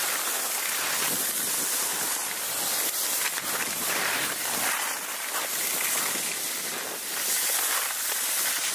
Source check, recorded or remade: recorded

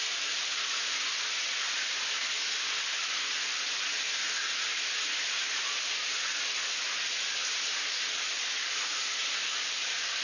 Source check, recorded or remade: recorded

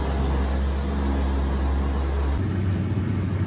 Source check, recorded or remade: recorded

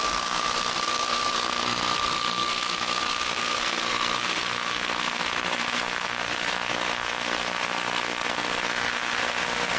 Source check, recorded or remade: remade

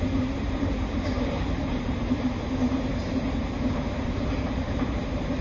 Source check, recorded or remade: remade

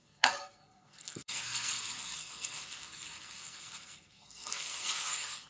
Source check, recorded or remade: remade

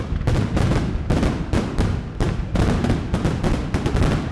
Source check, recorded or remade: recorded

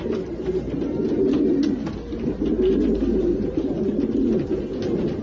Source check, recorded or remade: recorded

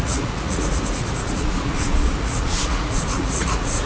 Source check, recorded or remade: remade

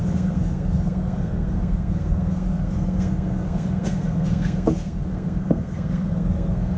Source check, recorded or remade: remade